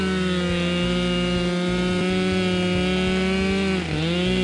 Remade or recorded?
recorded